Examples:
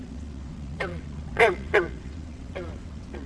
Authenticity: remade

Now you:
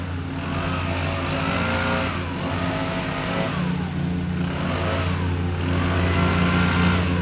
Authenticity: recorded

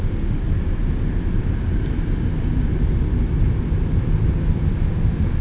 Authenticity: recorded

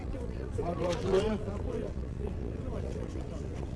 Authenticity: remade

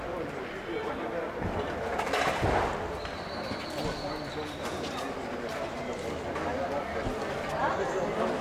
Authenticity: recorded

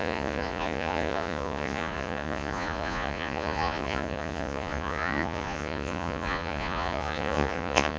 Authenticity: remade